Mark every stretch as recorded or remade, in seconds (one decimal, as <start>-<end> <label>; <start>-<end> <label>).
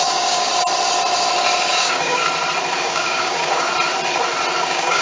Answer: 0.0-0.5 remade; 0.5-1.7 recorded; 1.7-2.2 remade; 2.2-2.8 recorded; 2.8-3.7 remade; 3.7-4.6 recorded; 4.6-5.0 remade